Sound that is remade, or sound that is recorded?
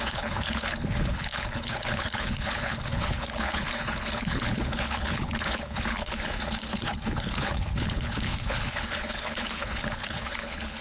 remade